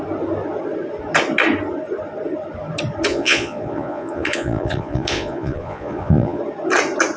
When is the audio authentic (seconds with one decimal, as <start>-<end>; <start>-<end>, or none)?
0.0-3.1; 6.4-7.2